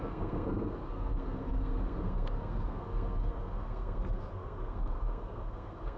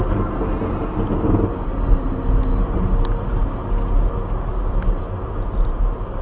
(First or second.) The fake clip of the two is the first